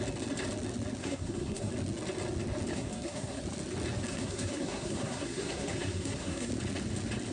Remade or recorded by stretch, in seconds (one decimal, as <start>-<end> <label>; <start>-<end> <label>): 0.0-1.0 recorded; 1.0-1.7 remade; 1.7-2.7 recorded; 2.7-3.4 remade; 3.4-4.1 recorded; 4.1-6.5 remade; 6.5-7.3 recorded